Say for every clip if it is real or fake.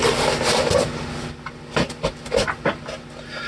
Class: real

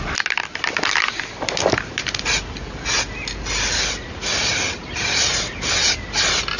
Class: real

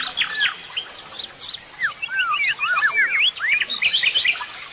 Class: real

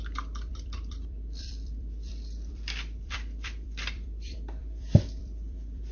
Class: fake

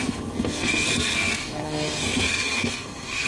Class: fake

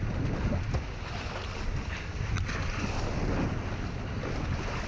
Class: real